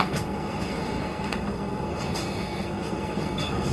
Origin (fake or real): fake